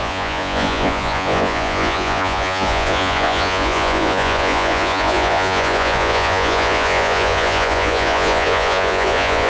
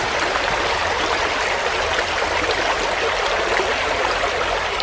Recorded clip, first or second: second